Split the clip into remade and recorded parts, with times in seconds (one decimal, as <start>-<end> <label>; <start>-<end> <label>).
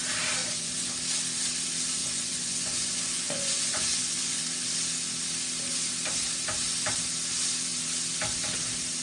0.0-0.4 recorded; 0.4-0.9 remade; 0.9-2.0 recorded; 2.0-4.4 remade; 4.4-9.0 recorded